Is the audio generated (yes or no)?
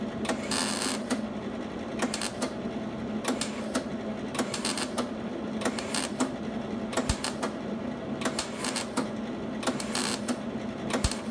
no